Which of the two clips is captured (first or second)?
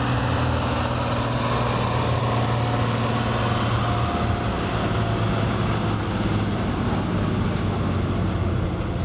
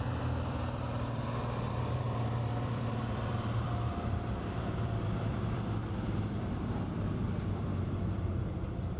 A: first